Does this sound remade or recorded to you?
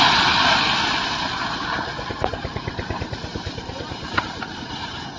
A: recorded